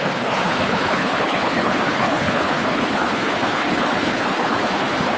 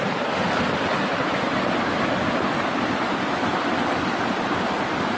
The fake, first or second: first